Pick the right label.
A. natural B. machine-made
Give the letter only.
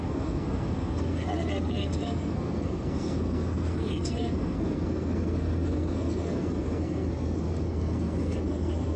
B